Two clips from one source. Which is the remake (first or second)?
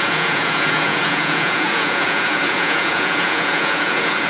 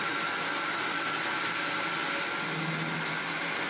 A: first